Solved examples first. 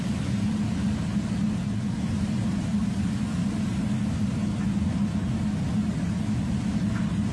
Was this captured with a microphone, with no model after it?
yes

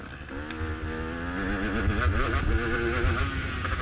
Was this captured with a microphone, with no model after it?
yes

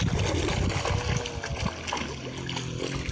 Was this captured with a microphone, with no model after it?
yes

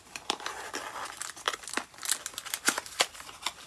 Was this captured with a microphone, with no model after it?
yes